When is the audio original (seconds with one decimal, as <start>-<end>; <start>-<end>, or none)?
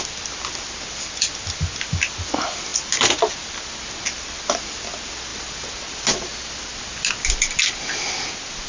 0.0-8.7